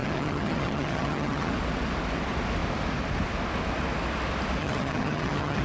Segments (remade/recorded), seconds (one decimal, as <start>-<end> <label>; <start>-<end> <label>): 0.0-1.5 remade; 1.5-4.6 recorded; 4.6-5.6 remade